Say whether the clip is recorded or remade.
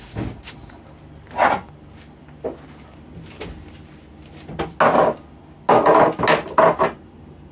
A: recorded